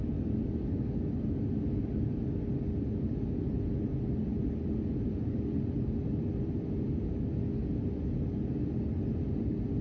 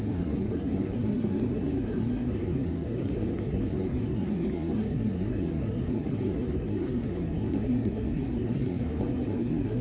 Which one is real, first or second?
first